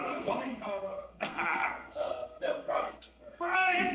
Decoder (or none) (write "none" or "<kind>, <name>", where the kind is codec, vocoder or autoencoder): codec, SNAC